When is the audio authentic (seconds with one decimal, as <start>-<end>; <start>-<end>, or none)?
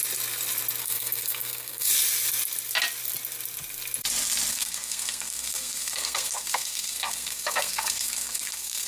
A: 0.0-0.8; 1.9-4.5